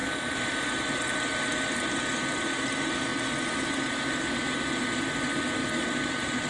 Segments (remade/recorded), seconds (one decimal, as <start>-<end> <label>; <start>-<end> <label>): 0.0-6.5 recorded